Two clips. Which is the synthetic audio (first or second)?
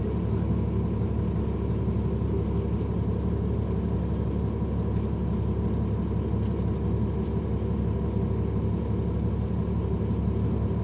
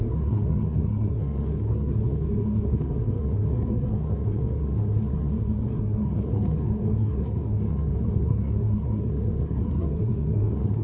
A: second